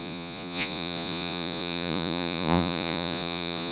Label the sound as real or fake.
fake